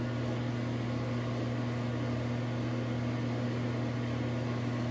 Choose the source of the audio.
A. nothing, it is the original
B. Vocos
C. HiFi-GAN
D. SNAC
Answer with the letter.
A